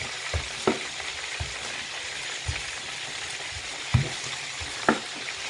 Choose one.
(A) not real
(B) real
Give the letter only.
B